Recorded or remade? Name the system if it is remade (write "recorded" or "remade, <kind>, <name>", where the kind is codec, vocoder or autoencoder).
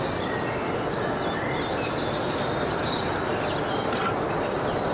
recorded